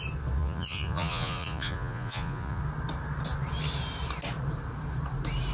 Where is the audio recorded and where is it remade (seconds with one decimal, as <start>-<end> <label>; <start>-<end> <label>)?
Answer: 0.0-0.4 recorded; 0.4-2.6 remade; 2.6-5.5 recorded